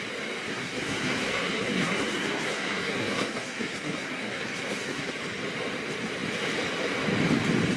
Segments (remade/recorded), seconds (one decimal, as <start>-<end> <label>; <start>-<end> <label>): 0.0-0.5 recorded; 0.5-5.1 remade; 5.1-7.8 recorded